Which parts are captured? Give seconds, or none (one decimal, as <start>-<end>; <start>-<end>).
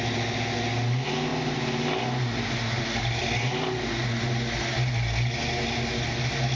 0.0-6.6